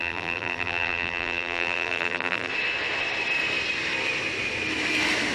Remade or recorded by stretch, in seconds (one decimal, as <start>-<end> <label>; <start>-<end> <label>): 0.0-2.5 remade; 2.5-5.3 recorded